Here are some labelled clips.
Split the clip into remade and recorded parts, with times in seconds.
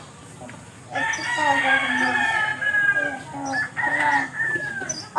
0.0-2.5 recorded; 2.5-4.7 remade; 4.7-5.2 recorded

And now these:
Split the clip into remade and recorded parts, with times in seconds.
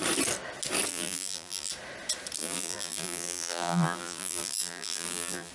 0.0-0.9 recorded; 0.9-1.7 remade; 1.7-2.4 recorded; 2.4-5.5 remade